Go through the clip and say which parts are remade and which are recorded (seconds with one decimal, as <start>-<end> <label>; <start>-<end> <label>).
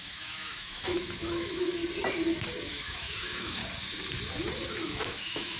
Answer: 0.0-1.8 remade; 1.8-2.7 recorded; 2.7-3.6 remade; 3.6-4.7 recorded; 4.7-5.6 remade